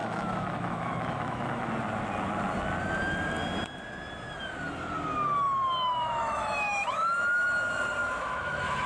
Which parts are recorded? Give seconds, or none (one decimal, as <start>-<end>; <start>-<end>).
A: 1.7-5.6; 7.5-8.0